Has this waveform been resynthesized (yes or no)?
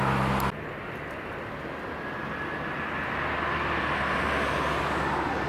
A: no